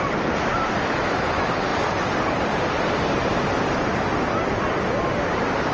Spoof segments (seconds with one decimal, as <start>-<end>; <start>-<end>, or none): none